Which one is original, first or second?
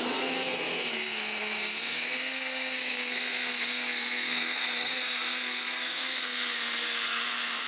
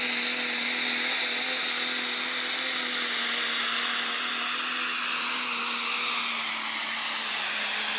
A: second